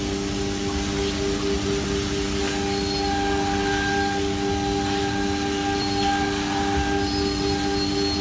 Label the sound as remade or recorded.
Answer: recorded